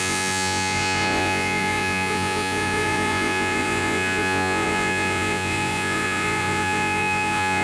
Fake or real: fake